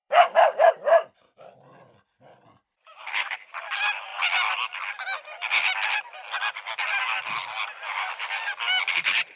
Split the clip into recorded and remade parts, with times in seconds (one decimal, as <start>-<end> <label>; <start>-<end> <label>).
0.0-0.7 remade; 0.7-2.9 recorded; 2.9-3.5 remade; 3.5-9.4 recorded

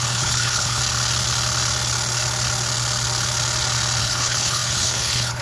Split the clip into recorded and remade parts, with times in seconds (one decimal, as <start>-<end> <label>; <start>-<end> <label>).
0.0-0.8 remade; 0.8-4.0 recorded; 4.0-5.4 remade

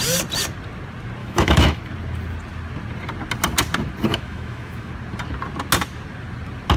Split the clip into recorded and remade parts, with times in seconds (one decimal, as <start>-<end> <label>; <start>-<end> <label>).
0.0-1.2 recorded; 1.2-1.8 remade; 1.8-4.1 recorded; 4.1-4.9 remade; 4.9-6.8 recorded

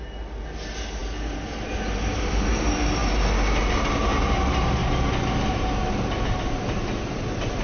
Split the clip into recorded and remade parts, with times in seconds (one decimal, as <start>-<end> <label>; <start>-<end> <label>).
0.0-7.6 recorded

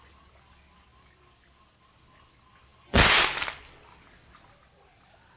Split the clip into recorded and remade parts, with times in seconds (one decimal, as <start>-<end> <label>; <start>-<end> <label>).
0.0-5.4 recorded

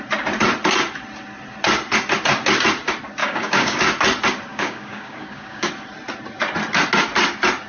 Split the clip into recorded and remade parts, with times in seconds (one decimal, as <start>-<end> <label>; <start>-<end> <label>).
0.0-3.2 recorded; 3.2-3.8 remade; 3.8-4.5 recorded; 4.5-5.7 remade; 5.7-7.7 recorded

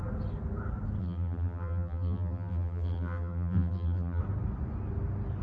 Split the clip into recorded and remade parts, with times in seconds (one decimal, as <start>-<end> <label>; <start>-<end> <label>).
0.0-1.0 recorded; 1.0-4.2 remade; 4.2-5.4 recorded

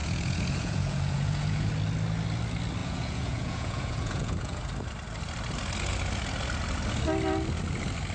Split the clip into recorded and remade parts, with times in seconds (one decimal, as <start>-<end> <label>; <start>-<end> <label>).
0.0-1.7 remade; 1.7-2.8 recorded; 2.8-4.6 remade; 4.6-8.1 recorded